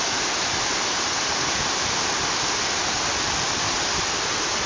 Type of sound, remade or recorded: remade